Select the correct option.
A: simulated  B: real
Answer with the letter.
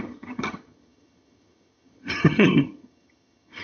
A